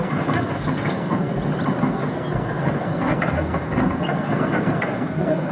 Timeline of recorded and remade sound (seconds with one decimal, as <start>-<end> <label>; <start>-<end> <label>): 0.0-1.3 remade; 1.3-1.8 recorded; 1.8-5.5 remade